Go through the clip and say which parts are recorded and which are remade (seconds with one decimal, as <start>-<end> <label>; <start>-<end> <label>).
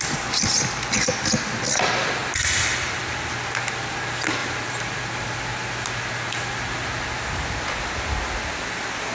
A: 0.0-2.0 recorded; 2.0-2.7 remade; 2.7-4.4 recorded; 4.4-5.5 remade; 5.5-9.1 recorded